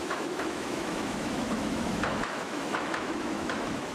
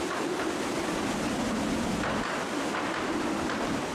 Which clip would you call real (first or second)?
second